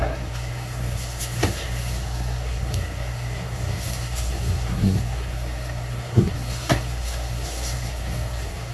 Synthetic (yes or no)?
yes